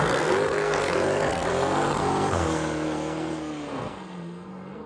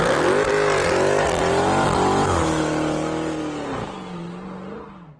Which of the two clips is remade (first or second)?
first